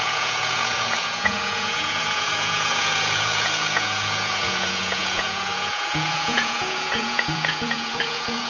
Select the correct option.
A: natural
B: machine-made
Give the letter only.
B